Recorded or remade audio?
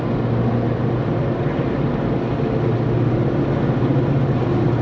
recorded